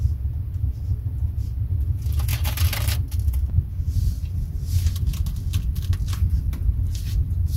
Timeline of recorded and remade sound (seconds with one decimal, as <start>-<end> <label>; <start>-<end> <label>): 0.0-2.3 recorded; 2.3-2.9 remade; 2.9-7.6 recorded